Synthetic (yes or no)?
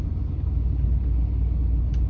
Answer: no